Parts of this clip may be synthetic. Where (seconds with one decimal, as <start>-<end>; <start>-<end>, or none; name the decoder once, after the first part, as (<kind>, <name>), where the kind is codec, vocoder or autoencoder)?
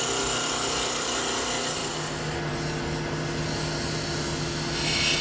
none